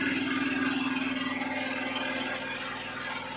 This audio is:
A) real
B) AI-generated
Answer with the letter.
A